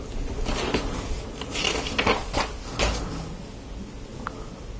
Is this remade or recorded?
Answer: recorded